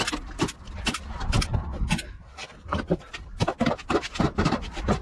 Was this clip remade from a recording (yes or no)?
no